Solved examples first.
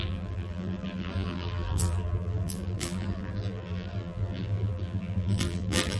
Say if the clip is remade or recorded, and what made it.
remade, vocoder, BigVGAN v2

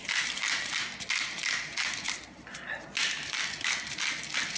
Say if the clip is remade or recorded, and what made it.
recorded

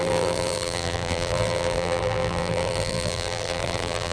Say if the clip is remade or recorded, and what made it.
remade, vocoder, BigVGAN v2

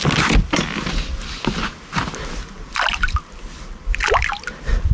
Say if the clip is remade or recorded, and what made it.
recorded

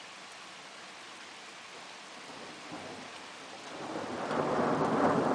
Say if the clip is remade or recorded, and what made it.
recorded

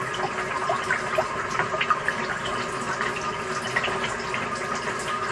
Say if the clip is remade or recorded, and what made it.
recorded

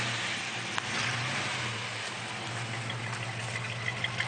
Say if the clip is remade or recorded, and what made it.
recorded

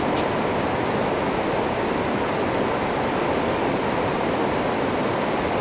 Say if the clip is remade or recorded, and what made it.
recorded